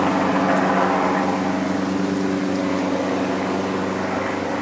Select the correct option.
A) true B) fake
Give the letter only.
A